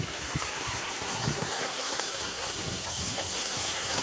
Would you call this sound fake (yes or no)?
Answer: yes